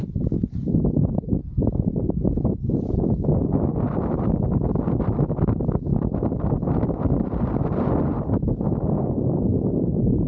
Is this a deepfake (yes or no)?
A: no